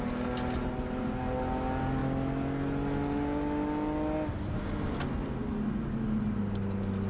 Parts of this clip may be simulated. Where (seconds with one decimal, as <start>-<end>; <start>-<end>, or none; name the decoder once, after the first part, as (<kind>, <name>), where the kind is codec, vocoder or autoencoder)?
none